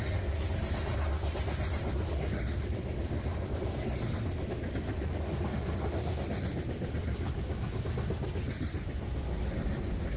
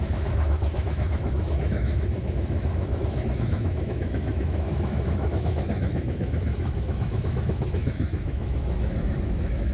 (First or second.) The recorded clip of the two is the first